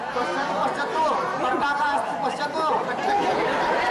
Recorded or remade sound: remade